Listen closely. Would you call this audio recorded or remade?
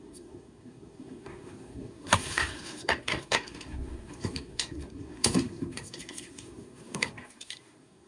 remade